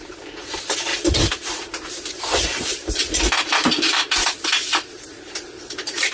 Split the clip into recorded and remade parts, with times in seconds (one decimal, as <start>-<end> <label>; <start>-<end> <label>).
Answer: 0.0-6.1 remade